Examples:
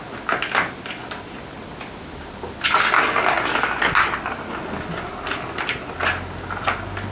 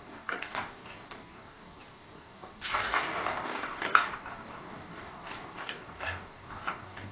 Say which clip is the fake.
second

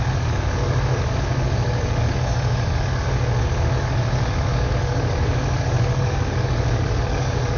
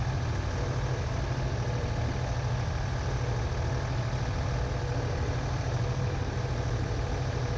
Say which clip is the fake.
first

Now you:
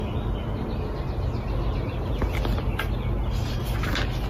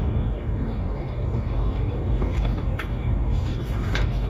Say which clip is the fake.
second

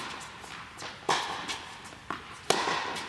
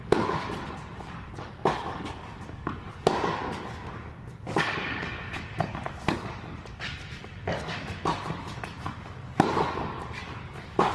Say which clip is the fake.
second